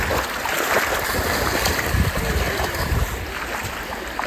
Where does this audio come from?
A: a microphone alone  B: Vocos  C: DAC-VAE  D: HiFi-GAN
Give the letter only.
A